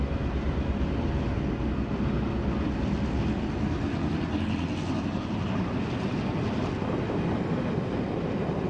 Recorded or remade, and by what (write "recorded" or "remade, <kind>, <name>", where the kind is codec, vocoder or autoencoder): recorded